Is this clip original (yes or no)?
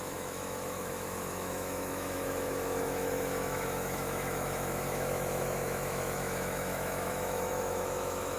no